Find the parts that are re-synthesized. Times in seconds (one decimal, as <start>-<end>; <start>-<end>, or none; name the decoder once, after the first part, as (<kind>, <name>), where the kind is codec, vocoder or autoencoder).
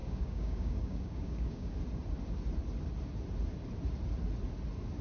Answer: 0.0-1.7 (codec, DAC)